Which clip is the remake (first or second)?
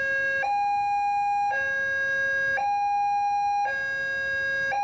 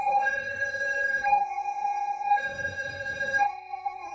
second